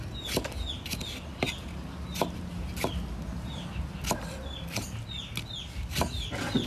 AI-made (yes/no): no